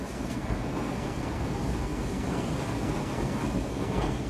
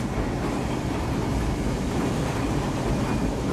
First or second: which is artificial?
first